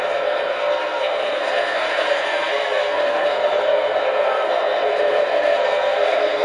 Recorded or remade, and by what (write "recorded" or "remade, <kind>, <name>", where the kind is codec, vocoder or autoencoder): remade, codec, SNAC